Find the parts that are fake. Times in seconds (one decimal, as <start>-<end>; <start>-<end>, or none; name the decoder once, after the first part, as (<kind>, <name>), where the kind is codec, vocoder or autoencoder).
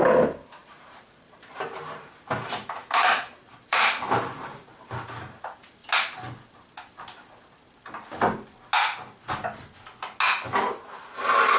0.6-4.7 (vocoder, BigVGAN v2)